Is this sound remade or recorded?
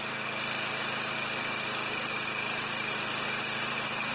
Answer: recorded